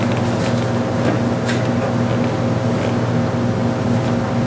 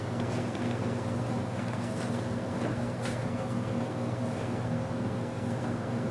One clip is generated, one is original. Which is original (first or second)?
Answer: first